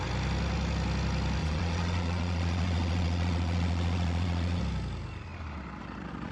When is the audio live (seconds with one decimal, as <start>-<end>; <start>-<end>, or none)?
0.0-1.4; 4.6-6.3